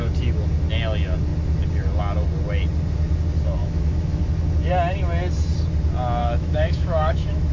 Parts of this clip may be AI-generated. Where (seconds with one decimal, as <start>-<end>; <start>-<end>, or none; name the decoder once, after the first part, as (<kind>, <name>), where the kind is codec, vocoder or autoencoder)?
3.6-4.2 (autoencoder, DAC-VAE); 6.2-7.5